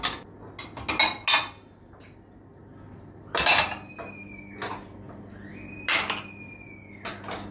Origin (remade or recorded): recorded